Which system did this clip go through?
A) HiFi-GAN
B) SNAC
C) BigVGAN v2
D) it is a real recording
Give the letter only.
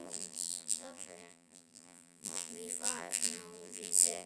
C